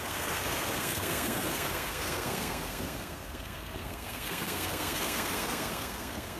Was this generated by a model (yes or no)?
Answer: yes